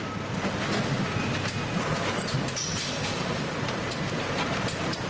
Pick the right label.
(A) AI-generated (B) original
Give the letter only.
B